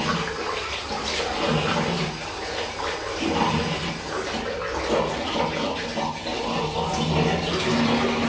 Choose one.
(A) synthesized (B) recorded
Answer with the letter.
B